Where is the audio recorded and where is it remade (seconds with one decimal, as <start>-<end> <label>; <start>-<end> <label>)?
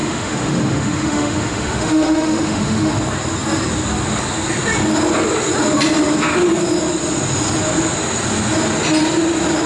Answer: 0.0-2.9 remade; 2.9-9.7 recorded